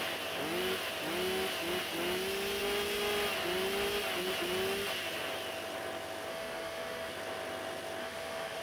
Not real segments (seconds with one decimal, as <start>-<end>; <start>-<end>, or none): 6.3-7.1; 8.0-8.6